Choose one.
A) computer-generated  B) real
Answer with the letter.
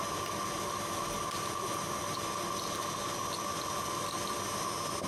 B